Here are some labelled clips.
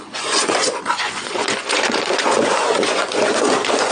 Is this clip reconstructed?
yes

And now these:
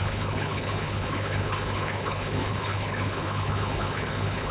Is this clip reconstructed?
yes